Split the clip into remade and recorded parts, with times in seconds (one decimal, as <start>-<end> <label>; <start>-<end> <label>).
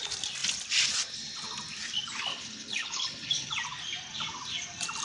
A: 0.0-2.3 recorded; 2.3-3.5 remade; 3.5-5.0 recorded